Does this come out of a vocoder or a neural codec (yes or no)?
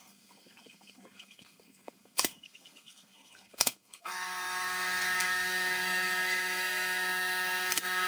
yes